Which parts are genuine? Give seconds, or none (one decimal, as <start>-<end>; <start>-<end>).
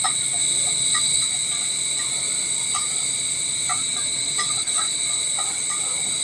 0.0-3.7; 5.0-6.2